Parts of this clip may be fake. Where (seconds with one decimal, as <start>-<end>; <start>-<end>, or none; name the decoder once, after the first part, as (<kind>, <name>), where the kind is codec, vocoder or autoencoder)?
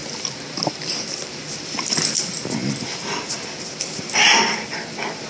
0.0-5.3 (vocoder, BigVGAN v2)